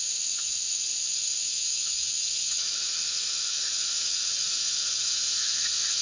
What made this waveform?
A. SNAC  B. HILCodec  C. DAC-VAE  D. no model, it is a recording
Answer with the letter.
C